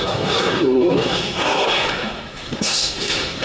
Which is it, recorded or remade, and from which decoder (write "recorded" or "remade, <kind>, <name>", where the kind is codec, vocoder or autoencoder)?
remade, codec, SNAC